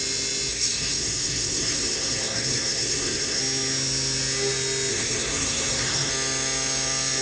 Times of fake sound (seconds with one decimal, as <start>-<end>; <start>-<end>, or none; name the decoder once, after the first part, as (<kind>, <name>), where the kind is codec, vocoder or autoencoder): 0.5-3.4 (codec, SNAC); 4.9-6.1

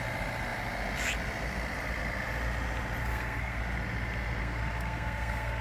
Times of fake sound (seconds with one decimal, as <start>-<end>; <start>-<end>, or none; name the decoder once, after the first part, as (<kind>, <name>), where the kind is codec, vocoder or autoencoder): 3.0-3.6 (codec, SNAC); 4.4-5.6

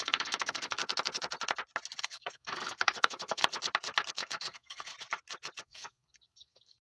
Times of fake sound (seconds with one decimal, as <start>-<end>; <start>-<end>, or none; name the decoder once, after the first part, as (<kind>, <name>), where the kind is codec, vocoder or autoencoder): 0.0-0.8 (codec, SNAC); 2.0-3.4; 4.1-4.9; 5.6-6.9

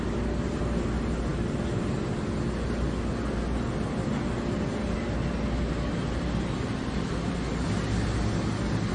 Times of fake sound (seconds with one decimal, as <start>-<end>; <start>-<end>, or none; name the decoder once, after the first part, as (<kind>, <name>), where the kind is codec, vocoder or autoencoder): none